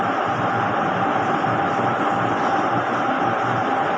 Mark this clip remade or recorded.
recorded